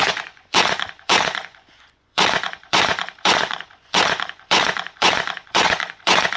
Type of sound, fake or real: fake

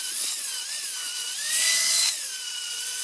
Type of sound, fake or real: fake